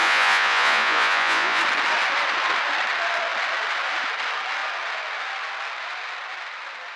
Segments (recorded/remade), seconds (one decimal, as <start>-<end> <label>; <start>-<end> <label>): 0.0-1.6 remade; 1.6-7.0 recorded